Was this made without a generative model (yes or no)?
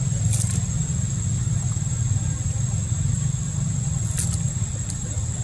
yes